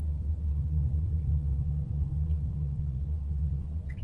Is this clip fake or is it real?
fake